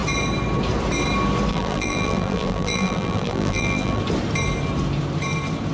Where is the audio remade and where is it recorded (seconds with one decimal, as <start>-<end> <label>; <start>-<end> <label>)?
0.0-1.5 recorded; 1.5-4.0 remade; 4.0-5.7 recorded